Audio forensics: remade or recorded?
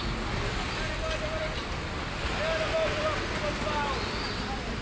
recorded